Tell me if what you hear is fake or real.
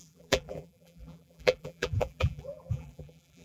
fake